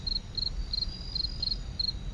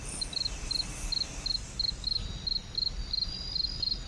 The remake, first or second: first